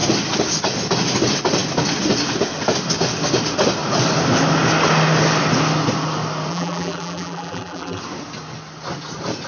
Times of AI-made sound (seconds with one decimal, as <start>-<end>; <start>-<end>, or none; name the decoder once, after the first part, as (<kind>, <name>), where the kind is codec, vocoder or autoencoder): 6.5-8.0 (vocoder, BigVGAN v2)